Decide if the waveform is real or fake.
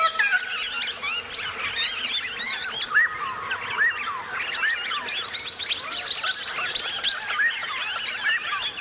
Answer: real